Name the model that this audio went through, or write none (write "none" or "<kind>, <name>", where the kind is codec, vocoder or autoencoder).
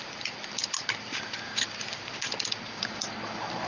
none